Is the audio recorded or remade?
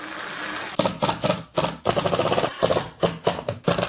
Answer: recorded